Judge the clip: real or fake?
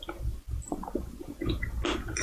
real